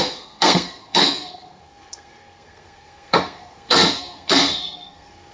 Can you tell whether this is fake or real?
fake